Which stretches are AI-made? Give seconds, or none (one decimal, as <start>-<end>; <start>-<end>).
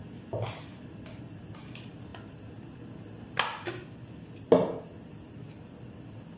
none